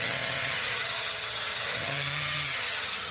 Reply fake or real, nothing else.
fake